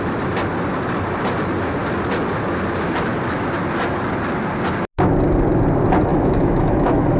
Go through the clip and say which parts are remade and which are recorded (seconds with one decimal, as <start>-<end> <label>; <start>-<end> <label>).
0.0-6.1 recorded; 6.1-7.2 remade